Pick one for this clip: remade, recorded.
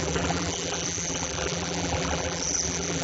remade